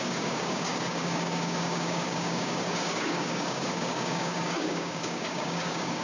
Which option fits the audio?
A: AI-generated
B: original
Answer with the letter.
A